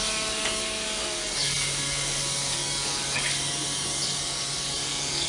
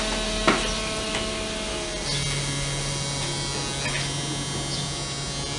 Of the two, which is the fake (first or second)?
first